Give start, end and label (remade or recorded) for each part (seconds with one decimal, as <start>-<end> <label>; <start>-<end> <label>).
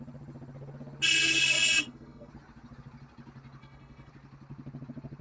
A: 0.0-1.8 recorded; 1.8-2.3 remade; 2.3-3.6 recorded; 3.6-4.1 remade; 4.1-5.2 recorded